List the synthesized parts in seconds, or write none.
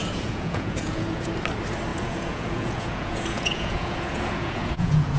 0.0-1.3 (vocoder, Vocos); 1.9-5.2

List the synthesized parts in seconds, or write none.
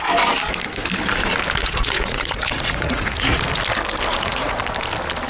1.6-3.4 (vocoder, Vocos); 4.1-4.6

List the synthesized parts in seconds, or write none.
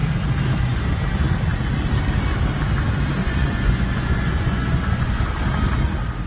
3.2-5.2 (vocoder, Vocos)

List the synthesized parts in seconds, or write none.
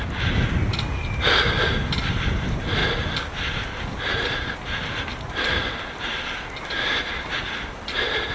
none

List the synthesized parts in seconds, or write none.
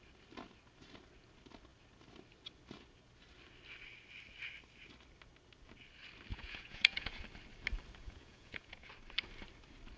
6.3-7.2 (vocoder, Vocos); 8.0-8.9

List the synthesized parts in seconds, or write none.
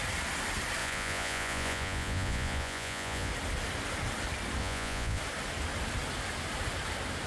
0.8-3.3 (vocoder, Vocos); 4.6-5.2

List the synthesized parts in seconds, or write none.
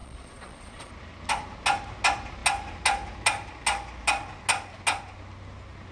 0.0-0.9 (vocoder, Vocos)